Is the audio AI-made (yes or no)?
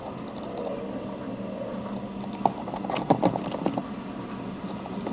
no